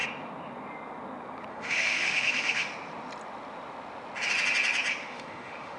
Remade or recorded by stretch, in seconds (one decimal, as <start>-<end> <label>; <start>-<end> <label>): 0.0-1.5 recorded; 1.5-2.7 remade; 2.7-5.0 recorded; 5.0-5.8 remade